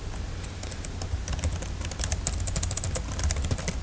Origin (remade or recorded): recorded